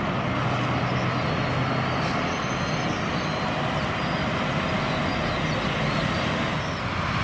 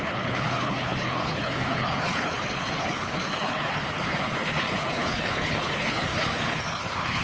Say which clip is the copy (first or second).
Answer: second